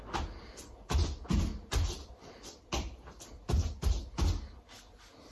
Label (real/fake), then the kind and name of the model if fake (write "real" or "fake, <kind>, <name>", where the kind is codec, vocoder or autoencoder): real